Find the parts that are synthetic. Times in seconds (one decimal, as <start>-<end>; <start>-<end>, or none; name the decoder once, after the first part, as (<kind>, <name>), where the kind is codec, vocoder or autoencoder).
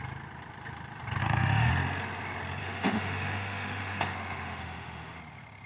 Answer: 1.2-1.7 (autoencoder, DAC-VAE); 2.6-5.2